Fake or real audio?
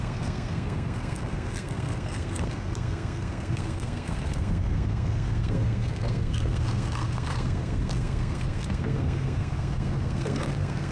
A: fake